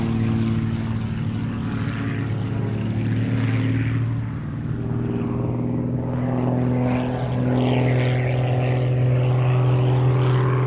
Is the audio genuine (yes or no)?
yes